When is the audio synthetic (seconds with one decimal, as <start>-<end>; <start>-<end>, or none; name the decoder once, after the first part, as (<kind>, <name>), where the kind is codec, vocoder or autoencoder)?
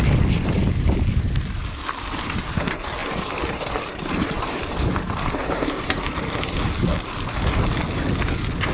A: 0.6-1.4 (vocoder, BigVGAN v2); 3.0-6.0